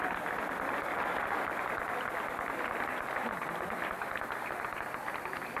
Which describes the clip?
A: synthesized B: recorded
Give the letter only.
B